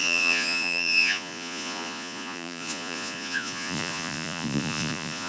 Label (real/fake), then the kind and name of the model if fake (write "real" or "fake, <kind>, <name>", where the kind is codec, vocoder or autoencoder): fake, vocoder, Vocos